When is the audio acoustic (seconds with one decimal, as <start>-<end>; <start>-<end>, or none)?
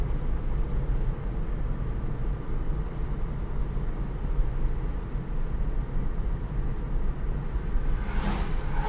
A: 0.0-8.9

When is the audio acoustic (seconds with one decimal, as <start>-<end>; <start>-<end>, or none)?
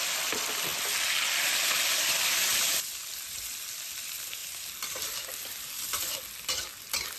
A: 0.0-7.2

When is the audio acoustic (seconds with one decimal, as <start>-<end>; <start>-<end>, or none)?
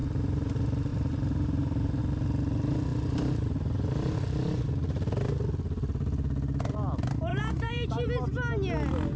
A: 0.5-0.9; 2.0-2.9; 4.1-7.3; 8.1-9.2